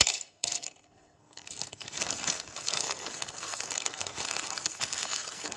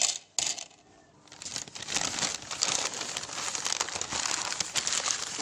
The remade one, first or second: first